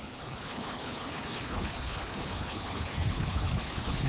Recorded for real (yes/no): no